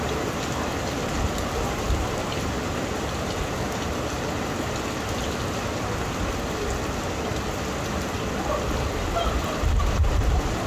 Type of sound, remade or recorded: recorded